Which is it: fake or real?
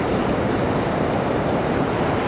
fake